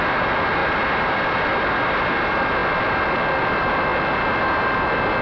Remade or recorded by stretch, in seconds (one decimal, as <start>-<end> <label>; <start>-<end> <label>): 0.0-5.2 recorded